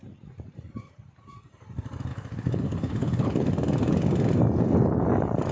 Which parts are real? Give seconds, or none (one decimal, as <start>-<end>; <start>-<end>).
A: 0.0-2.1; 3.5-5.5

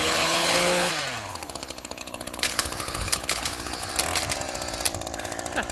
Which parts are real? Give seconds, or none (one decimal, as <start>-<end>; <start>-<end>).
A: 0.9-1.3; 3.9-5.7